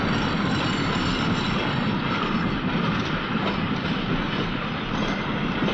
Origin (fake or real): real